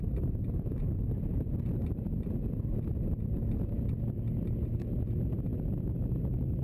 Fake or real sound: real